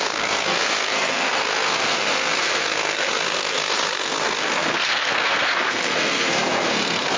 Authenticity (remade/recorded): remade